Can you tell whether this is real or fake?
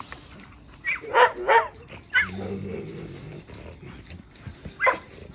real